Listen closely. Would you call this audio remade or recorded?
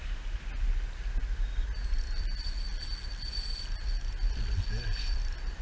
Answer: recorded